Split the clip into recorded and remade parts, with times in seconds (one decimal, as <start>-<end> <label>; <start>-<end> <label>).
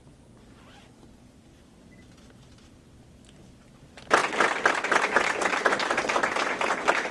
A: 0.0-7.1 recorded